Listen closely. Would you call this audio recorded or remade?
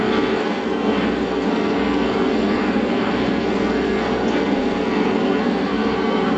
remade